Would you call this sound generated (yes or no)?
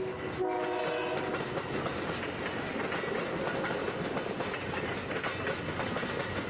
no